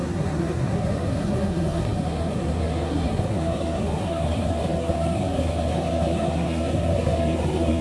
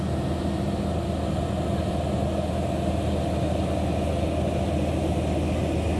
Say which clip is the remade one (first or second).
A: first